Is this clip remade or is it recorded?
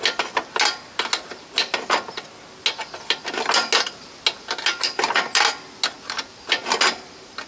recorded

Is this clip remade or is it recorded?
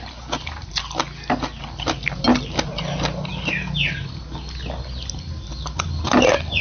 recorded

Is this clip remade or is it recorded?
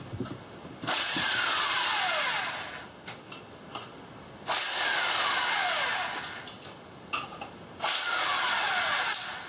recorded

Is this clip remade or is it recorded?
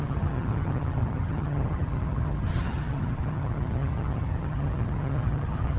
remade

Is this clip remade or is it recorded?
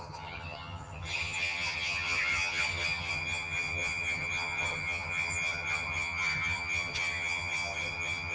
remade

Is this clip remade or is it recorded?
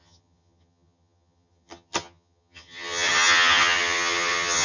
remade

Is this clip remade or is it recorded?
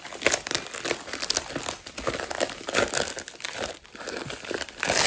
recorded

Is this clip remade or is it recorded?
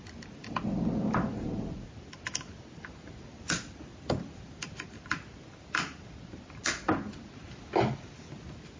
recorded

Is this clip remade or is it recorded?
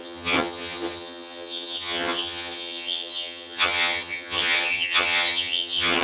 remade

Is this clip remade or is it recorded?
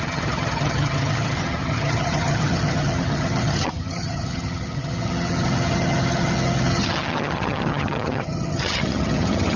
remade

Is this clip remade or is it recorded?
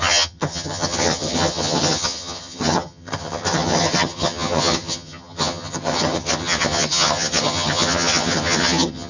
remade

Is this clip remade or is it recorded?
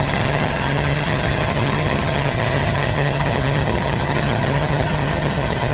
remade